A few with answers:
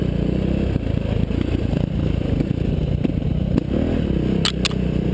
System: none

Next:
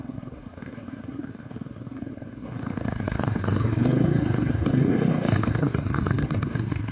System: codec, SNAC